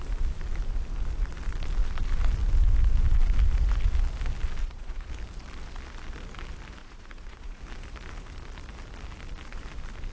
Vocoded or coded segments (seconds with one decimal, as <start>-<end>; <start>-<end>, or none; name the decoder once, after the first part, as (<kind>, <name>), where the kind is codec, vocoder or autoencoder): 4.6-5.1 (vocoder, Vocos); 6.8-7.6